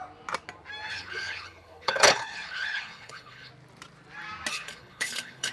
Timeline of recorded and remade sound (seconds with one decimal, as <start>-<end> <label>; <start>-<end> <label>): 0.0-0.9 recorded; 0.9-3.5 remade; 3.5-4.5 recorded; 4.5-5.5 remade